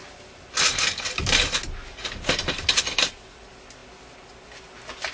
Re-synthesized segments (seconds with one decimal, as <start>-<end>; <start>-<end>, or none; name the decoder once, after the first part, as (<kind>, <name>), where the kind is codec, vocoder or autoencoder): none